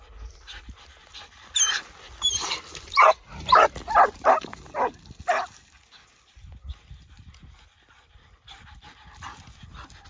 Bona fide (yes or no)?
yes